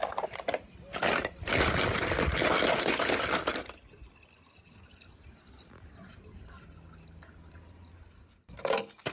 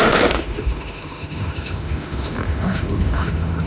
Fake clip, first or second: second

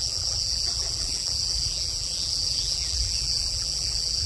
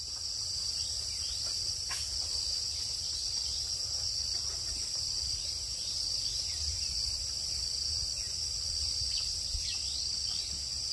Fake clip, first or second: first